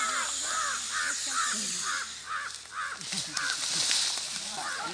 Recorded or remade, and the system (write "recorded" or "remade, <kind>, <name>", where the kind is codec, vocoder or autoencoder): recorded